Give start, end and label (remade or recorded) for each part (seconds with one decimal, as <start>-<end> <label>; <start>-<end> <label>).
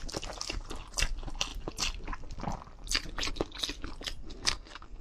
0.0-4.2 recorded; 4.2-5.0 remade